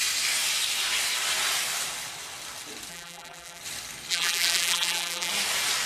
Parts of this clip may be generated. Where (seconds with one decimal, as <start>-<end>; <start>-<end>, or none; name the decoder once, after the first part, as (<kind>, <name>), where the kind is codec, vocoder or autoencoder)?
2.9-3.6 (vocoder, BigVGAN v2); 4.1-5.3